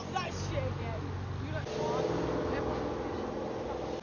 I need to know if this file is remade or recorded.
recorded